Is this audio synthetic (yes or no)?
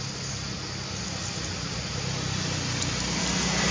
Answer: no